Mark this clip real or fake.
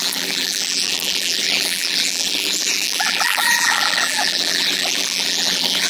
fake